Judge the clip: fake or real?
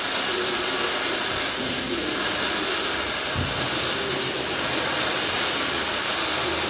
real